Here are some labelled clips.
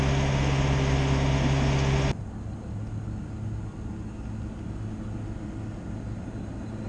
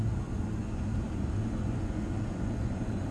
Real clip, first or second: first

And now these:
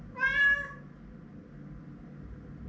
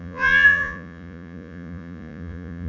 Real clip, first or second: first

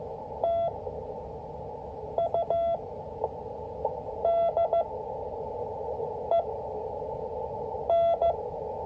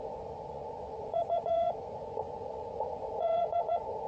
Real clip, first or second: first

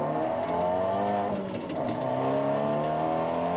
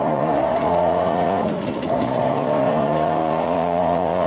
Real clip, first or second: first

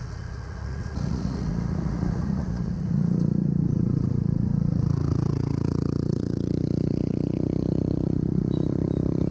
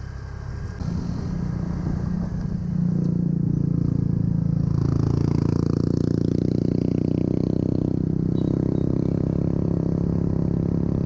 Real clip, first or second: second